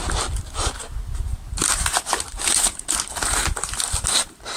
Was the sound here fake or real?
real